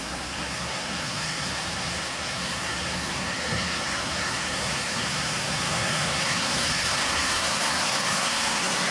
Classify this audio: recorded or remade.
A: remade